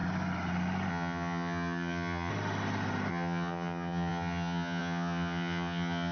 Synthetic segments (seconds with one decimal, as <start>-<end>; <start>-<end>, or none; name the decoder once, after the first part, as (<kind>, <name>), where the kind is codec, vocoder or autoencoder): 0.9-2.3 (vocoder, HiFi-GAN); 3.1-6.1